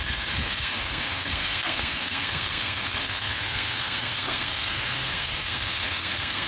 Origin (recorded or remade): remade